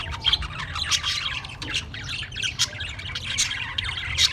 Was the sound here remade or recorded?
remade